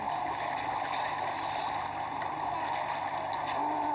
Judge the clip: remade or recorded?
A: recorded